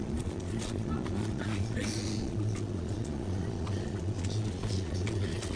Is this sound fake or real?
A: fake